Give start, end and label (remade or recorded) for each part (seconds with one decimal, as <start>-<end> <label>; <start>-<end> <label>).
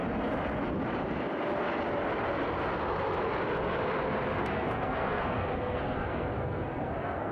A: 0.0-4.4 recorded; 4.4-7.3 remade